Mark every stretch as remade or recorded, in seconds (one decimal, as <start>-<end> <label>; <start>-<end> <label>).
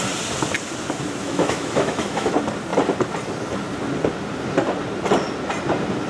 0.0-1.2 recorded; 1.2-2.3 remade; 2.3-6.1 recorded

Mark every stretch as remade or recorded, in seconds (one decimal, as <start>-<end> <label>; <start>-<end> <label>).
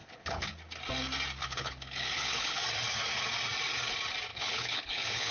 0.0-0.5 remade; 0.5-1.4 recorded; 1.4-2.6 remade; 2.6-4.3 recorded; 4.3-5.3 remade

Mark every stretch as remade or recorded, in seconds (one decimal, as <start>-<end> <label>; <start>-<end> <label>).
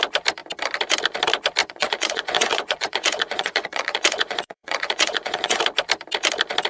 0.0-1.6 recorded; 1.6-5.6 remade; 5.6-6.7 recorded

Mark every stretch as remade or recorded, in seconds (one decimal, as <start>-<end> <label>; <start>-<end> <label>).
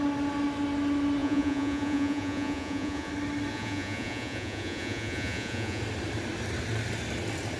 0.0-1.2 recorded; 1.2-3.1 remade; 3.1-3.5 recorded; 3.5-5.8 remade; 5.8-7.6 recorded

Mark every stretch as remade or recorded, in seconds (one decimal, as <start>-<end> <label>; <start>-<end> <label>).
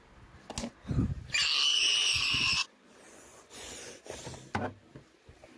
0.0-1.7 recorded; 1.7-3.9 remade; 3.9-5.6 recorded